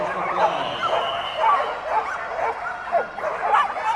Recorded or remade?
recorded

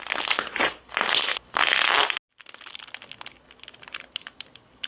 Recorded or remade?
recorded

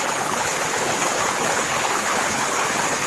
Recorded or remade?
remade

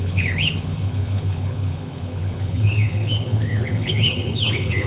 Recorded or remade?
remade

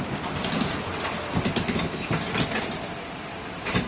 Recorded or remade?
recorded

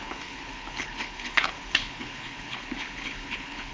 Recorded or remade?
remade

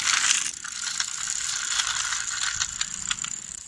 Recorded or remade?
recorded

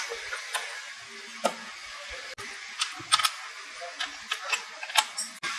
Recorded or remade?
recorded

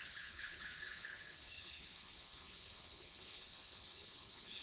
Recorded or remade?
remade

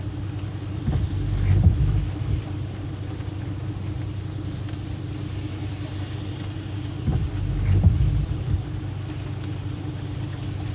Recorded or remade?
recorded